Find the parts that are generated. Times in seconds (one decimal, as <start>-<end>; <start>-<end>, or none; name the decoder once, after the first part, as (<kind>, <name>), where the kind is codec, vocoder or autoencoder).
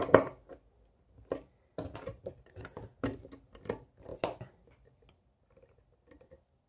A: none